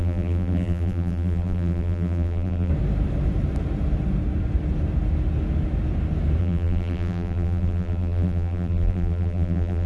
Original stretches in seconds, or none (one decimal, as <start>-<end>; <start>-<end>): 2.7-6.4